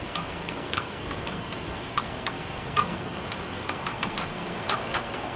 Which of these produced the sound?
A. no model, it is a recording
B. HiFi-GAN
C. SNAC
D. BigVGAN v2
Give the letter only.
C